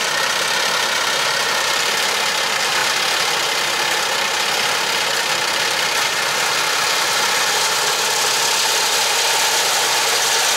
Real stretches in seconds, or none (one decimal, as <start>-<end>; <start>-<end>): 0.0-10.6